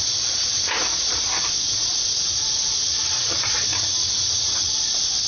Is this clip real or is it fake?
fake